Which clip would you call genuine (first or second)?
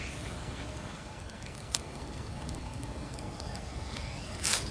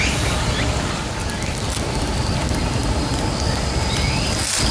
second